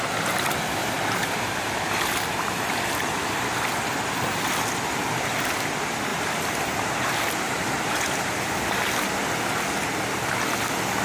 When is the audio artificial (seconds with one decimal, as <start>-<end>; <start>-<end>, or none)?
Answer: 0.8-2.7; 6.1-8.6